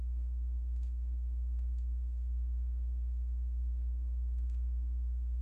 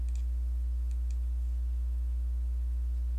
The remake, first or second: first